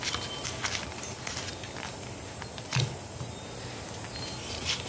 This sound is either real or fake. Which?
real